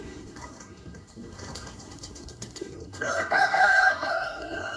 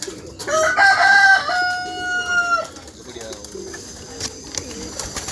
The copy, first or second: first